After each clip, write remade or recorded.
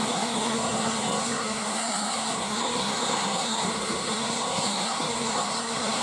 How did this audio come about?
remade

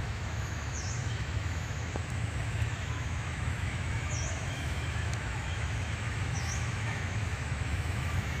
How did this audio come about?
remade